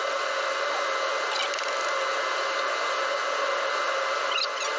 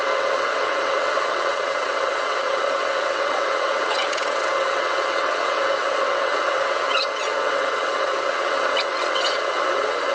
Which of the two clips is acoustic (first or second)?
first